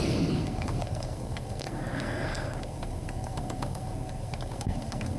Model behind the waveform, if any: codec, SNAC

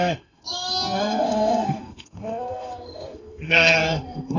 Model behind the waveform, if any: codec, SNAC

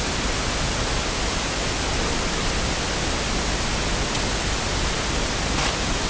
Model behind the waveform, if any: none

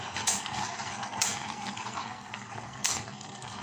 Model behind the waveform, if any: codec, SNAC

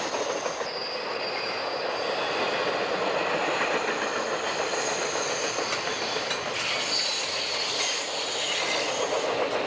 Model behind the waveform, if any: none